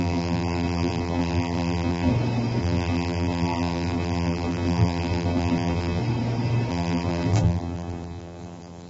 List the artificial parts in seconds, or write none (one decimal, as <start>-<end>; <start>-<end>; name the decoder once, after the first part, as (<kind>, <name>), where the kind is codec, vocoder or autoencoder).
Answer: 0.0-2.1 (vocoder, BigVGAN v2); 2.6-6.0; 6.7-8.9